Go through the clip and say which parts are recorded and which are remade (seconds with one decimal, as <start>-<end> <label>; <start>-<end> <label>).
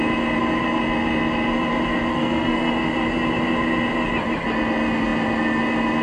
0.0-2.1 recorded; 2.1-2.7 remade; 2.7-6.0 recorded